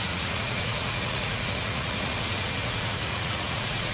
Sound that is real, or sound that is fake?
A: fake